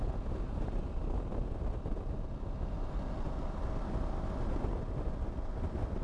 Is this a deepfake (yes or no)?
no